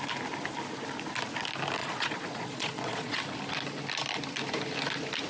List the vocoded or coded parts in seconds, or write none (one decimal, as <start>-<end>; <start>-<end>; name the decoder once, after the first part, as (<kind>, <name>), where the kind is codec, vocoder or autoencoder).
1.8-3.2 (vocoder, Vocos)